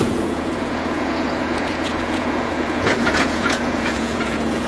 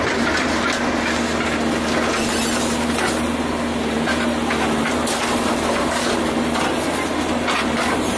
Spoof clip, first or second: first